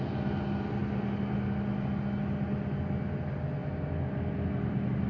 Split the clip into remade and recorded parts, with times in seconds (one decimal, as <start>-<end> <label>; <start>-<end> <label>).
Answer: 0.0-5.1 recorded